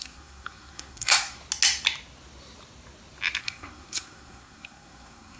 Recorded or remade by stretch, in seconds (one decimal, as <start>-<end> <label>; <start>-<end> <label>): 0.0-1.4 remade; 1.4-3.4 recorded; 3.4-5.4 remade